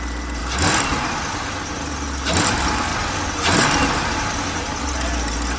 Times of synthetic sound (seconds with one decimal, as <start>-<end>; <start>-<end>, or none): none